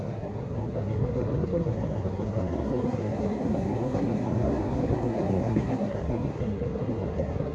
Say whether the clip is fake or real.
fake